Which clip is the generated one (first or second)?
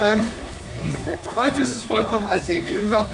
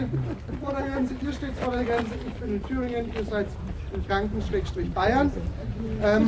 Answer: first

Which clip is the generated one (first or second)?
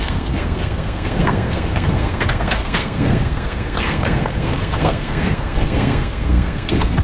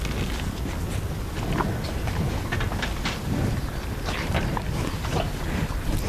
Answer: first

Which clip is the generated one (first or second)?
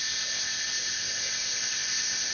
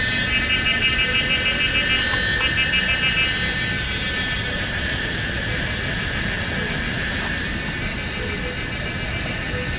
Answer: first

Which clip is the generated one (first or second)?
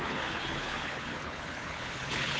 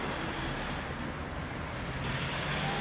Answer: first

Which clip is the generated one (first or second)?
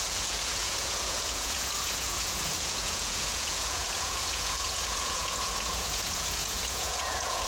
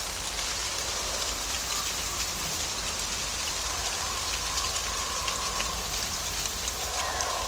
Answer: first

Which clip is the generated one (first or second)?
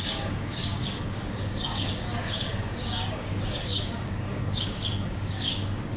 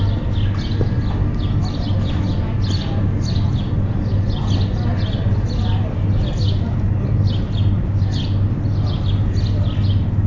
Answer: first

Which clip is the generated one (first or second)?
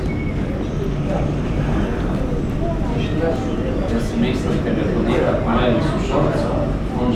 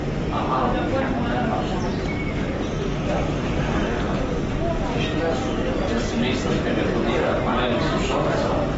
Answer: second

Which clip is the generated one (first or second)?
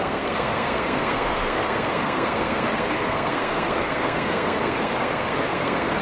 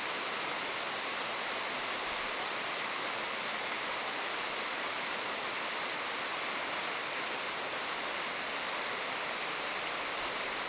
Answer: first